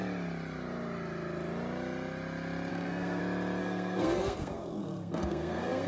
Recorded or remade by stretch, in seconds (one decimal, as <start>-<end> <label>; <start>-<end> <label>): 0.0-2.7 recorded; 2.7-3.2 remade; 3.2-3.6 recorded; 3.6-5.9 remade

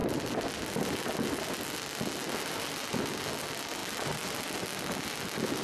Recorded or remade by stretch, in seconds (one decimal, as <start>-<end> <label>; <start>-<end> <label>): 0.0-5.6 recorded

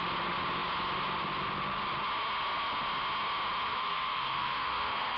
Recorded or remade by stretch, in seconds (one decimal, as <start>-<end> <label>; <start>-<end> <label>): 0.0-3.7 recorded; 3.7-5.2 remade

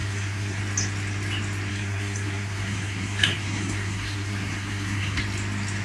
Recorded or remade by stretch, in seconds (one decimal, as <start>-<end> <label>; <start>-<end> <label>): 0.0-0.6 remade; 0.6-1.7 recorded; 1.7-5.2 remade; 5.2-5.8 recorded

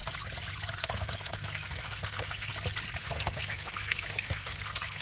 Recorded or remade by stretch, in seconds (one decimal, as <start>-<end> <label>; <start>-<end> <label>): 0.0-0.8 recorded; 0.8-2.5 remade; 2.5-3.0 recorded; 3.0-5.0 remade